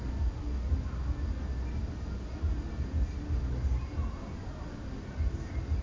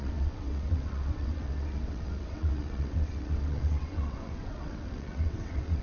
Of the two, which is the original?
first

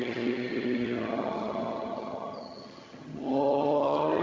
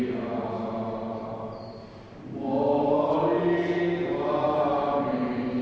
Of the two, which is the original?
second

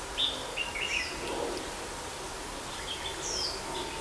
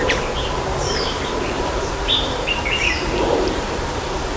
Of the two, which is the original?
first